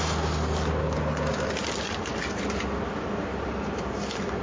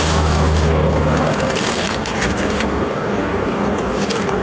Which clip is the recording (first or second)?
first